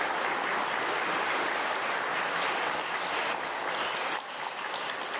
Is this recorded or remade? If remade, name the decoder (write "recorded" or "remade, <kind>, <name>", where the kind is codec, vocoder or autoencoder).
recorded